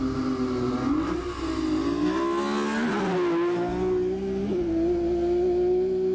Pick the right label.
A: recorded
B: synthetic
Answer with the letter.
A